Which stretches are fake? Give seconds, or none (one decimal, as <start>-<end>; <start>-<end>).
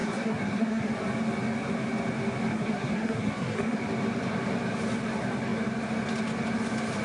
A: 0.0-0.9; 2.5-3.8